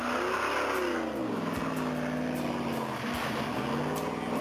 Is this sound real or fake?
real